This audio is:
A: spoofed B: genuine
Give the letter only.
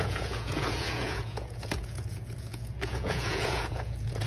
A